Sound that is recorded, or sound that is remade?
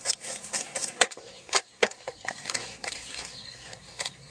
remade